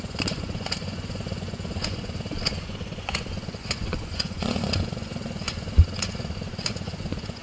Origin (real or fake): fake